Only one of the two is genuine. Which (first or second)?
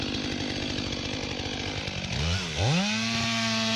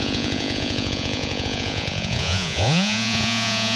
first